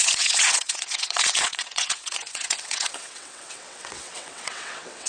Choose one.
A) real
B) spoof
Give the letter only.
B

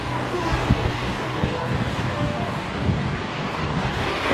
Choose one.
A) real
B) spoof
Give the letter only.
B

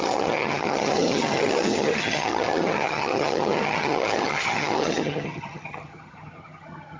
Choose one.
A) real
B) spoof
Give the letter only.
B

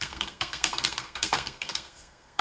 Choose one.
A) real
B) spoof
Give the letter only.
B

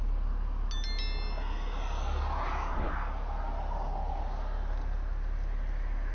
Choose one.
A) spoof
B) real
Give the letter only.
B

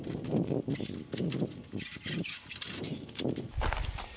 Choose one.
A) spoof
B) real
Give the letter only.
B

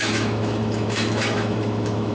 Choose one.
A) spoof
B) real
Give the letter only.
A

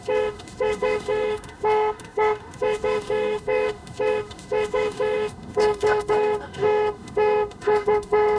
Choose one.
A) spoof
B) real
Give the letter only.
A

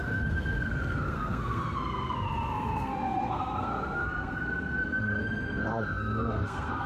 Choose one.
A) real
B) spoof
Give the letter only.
B